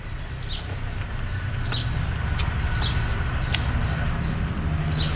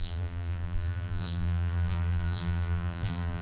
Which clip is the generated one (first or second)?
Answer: second